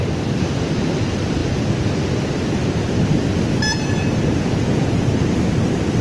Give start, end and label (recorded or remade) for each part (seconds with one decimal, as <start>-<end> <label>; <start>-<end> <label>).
0.0-6.0 recorded